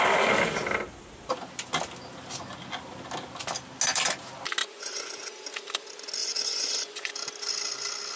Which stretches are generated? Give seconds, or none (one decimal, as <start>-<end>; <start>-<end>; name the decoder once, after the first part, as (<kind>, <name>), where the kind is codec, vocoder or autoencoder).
4.6-5.3 (vocoder, Vocos); 6.2-7.1